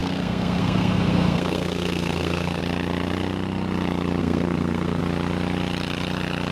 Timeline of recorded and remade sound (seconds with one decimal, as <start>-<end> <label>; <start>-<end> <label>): 0.0-2.6 remade; 2.6-4.2 recorded; 4.2-5.0 remade; 5.0-6.5 recorded